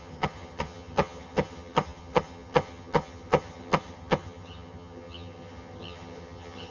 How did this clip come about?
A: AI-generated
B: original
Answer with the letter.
A